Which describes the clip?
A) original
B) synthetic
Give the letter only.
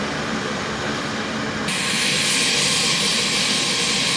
A